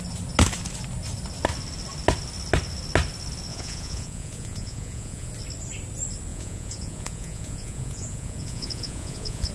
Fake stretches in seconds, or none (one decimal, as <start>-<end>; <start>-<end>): 3.5-5.3; 6.3-9.5